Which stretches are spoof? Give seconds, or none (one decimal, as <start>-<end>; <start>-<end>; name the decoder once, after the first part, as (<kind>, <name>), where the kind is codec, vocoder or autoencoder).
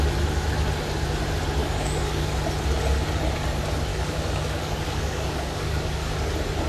1.6-2.4 (codec, DAC); 3.9-6.1